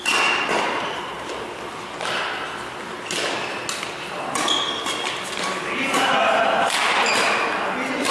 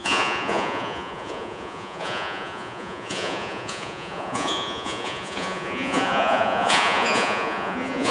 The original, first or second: first